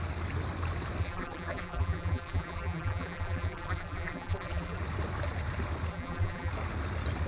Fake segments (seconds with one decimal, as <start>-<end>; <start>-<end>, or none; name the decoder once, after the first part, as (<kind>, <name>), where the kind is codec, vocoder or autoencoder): 1.0-4.8 (vocoder, BigVGAN v2); 5.9-6.5